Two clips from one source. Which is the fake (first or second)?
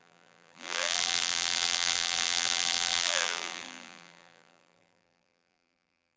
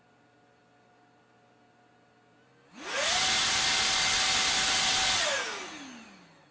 first